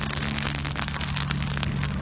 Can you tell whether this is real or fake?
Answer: real